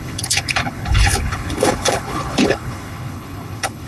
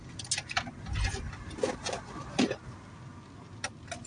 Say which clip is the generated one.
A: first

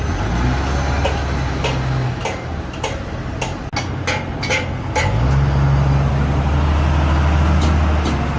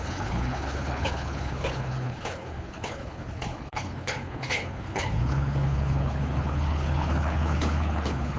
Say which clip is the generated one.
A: second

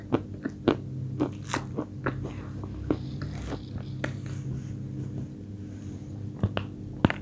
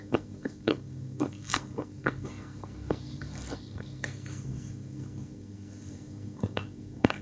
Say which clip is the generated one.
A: second